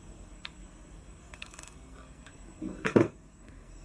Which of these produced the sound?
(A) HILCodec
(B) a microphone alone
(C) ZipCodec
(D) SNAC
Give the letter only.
D